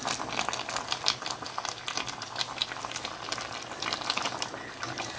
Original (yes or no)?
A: yes